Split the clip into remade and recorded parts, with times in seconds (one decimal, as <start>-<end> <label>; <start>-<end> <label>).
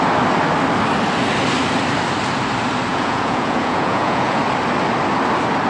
0.0-2.9 recorded; 2.9-4.4 remade; 4.4-5.7 recorded